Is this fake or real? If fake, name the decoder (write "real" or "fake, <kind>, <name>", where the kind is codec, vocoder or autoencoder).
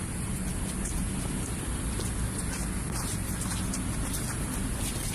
real